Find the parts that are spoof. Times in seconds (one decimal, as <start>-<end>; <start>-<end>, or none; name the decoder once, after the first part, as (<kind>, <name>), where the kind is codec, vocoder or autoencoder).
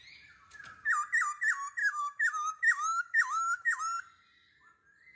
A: 1.8-3.8 (autoencoder, DAC-VAE)